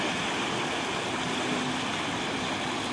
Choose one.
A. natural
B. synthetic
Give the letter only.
A